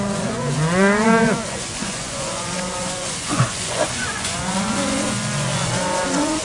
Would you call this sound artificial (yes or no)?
yes